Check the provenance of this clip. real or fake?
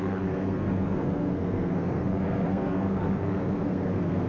fake